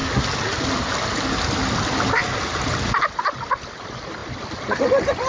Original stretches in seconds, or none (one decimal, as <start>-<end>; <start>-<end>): 0.0-5.3